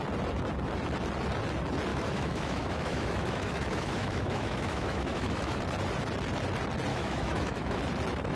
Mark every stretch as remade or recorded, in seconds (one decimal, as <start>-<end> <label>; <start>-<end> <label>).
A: 0.0-1.9 recorded; 1.9-5.6 remade; 5.6-6.9 recorded; 6.9-7.8 remade; 7.8-8.3 recorded